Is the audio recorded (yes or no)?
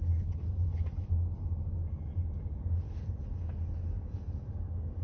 yes